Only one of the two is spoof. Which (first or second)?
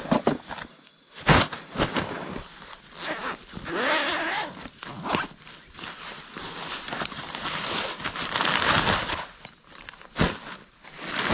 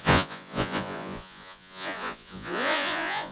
second